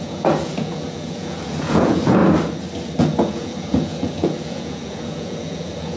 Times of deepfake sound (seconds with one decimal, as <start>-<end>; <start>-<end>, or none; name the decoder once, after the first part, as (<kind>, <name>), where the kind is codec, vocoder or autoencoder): 0.0-2.2 (vocoder, Vocos); 3.0-6.0